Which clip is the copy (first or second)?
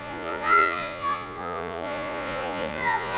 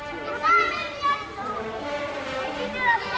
first